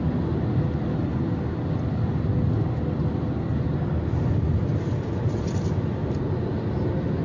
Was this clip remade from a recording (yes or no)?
no